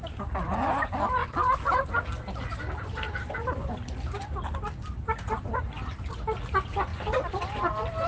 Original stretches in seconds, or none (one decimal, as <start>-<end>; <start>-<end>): 0.0-8.1